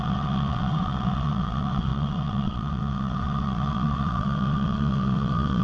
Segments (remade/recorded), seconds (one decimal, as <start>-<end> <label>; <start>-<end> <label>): 0.0-5.6 remade